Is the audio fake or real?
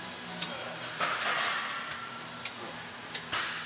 real